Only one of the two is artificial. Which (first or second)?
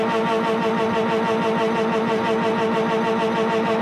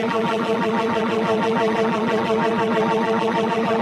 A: second